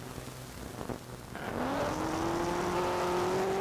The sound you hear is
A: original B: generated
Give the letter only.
A